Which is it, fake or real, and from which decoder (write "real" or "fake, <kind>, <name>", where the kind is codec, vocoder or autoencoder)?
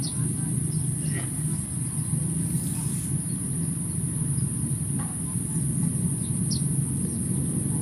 real